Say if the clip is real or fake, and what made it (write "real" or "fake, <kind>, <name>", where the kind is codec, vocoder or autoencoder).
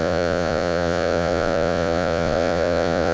fake, vocoder, Vocos